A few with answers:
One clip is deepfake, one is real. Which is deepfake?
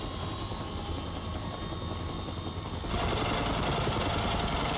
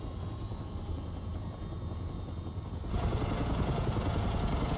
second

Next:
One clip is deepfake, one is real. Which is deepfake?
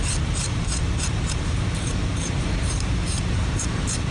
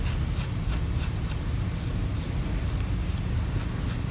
first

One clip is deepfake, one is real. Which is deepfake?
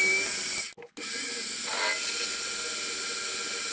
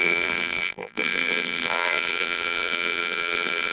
second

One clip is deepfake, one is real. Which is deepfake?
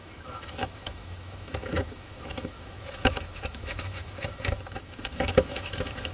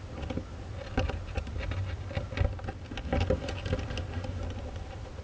first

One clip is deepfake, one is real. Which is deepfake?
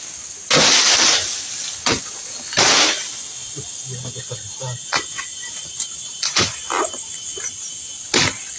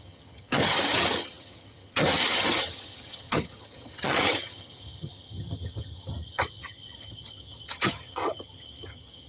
second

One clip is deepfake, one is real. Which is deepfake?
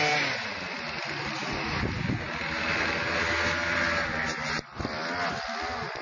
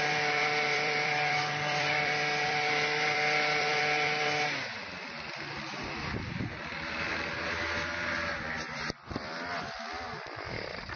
second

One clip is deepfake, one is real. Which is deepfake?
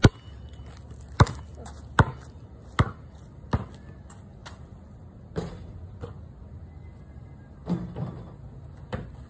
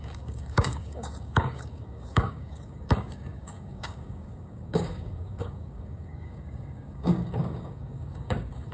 second